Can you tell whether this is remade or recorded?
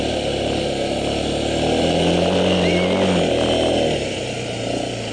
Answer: recorded